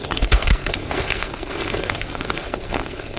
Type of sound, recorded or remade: remade